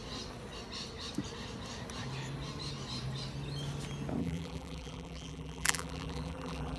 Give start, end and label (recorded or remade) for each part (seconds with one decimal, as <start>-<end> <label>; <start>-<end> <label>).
0.0-4.2 recorded; 4.2-6.8 remade